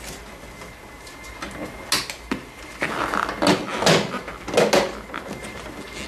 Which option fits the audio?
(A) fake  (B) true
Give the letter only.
B